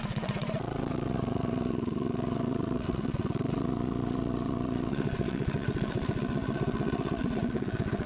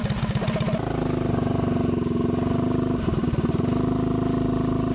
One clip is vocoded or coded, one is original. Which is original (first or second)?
second